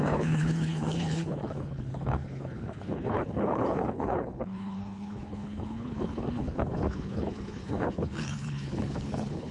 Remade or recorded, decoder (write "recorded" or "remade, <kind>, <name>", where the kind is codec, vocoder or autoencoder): remade, codec, HILCodec